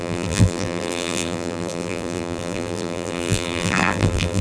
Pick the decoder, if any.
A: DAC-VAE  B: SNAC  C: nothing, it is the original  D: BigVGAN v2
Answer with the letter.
D